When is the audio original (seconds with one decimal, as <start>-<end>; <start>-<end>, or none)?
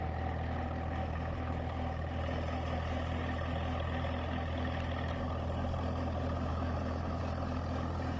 0.0-1.0; 1.5-6.5; 7.2-8.2